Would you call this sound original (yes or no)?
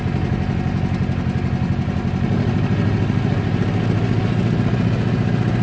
yes